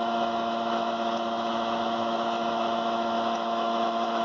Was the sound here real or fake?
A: fake